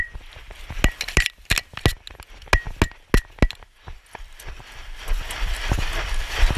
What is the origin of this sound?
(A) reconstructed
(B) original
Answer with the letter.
B